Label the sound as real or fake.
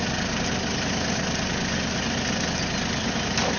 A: real